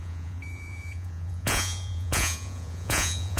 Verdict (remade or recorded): remade